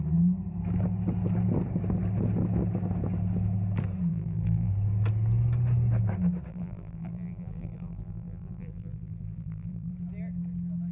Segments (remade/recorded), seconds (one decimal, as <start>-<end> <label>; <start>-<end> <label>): 0.0-4.1 recorded; 4.1-4.7 remade; 4.7-6.5 recorded; 6.5-9.9 remade; 9.9-10.9 recorded